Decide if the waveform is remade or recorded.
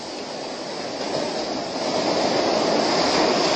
recorded